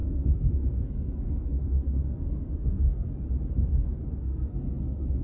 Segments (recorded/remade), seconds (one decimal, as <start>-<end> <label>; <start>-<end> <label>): 0.0-3.1 remade; 3.1-4.2 recorded; 4.2-5.2 remade